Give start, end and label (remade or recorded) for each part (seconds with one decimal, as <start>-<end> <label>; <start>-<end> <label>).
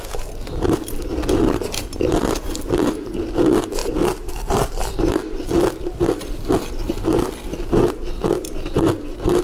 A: 0.0-3.8 recorded; 3.8-5.1 remade; 5.1-9.4 recorded